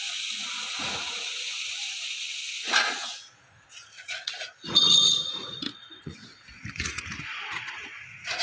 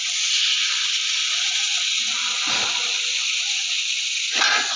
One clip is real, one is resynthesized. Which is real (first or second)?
second